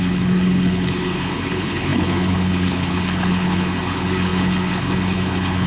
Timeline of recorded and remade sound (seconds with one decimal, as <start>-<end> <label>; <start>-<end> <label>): 0.0-5.7 remade